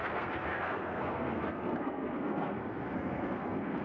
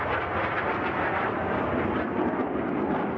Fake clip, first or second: first